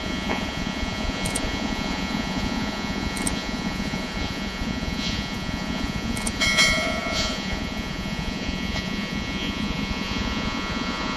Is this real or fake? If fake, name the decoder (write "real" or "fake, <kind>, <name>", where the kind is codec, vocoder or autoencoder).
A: fake, vocoder, Vocos